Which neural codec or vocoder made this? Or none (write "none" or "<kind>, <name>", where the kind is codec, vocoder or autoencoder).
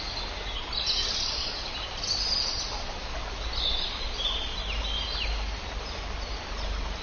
none